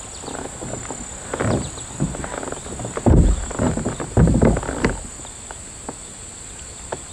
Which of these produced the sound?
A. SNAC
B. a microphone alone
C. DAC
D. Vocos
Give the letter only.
B